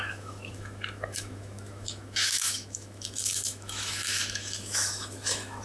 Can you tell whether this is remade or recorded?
remade